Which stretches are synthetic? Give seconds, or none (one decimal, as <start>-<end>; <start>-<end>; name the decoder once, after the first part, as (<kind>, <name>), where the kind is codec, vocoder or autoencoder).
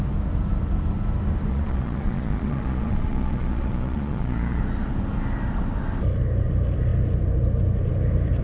1.5-4.6 (vocoder, Vocos)